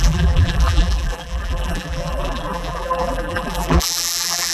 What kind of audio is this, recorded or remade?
remade